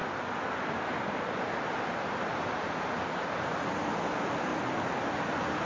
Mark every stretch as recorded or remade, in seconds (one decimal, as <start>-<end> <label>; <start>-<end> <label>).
0.0-0.9 recorded; 0.9-2.3 remade; 2.3-3.0 recorded; 3.0-4.5 remade; 4.5-5.7 recorded